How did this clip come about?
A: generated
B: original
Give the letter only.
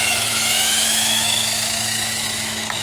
A